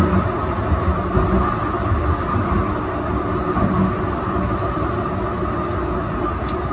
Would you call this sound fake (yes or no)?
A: no